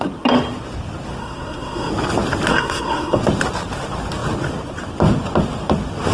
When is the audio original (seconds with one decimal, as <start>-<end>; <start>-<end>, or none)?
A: 0.0-1.2; 1.9-2.5; 3.2-6.1